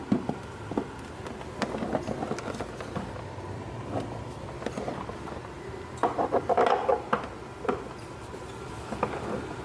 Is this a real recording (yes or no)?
yes